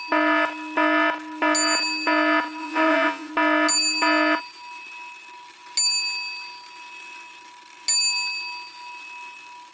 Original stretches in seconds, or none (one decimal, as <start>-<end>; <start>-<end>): 0.0-2.6; 3.3-9.7